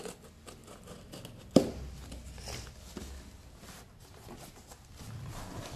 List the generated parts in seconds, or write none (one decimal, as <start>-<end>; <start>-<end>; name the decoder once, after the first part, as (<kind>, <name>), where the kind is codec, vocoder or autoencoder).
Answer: none